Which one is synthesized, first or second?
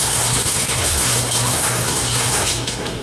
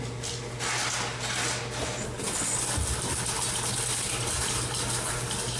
first